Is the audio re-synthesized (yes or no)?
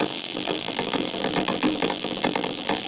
yes